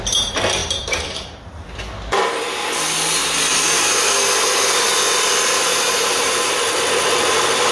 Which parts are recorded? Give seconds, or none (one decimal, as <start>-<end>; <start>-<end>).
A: 0.0-0.6; 1.6-3.2; 4.1-5.7; 6.6-7.7